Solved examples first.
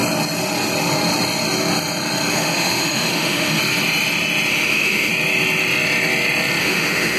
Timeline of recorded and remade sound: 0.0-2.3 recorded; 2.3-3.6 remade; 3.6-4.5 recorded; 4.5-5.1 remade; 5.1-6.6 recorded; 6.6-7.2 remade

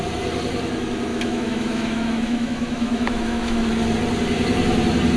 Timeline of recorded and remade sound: 0.0-1.1 recorded; 1.1-3.7 remade; 3.7-5.2 recorded

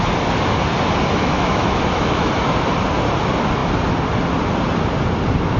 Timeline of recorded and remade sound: 0.0-1.2 recorded; 1.2-2.3 remade; 2.3-5.6 recorded

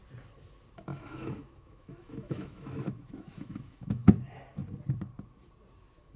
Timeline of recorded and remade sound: 0.0-0.9 recorded; 0.9-4.1 remade; 4.1-6.2 recorded

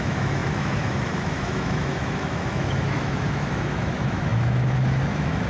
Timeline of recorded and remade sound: 0.0-5.5 remade

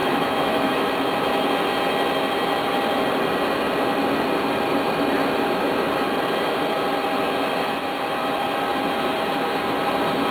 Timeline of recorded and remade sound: 0.0-0.9 remade; 0.9-10.3 recorded